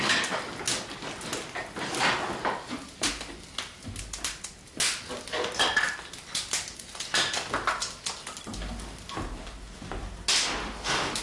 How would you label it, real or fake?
real